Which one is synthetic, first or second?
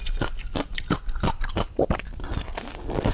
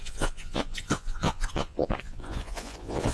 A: second